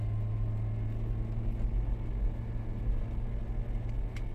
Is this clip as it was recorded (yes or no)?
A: yes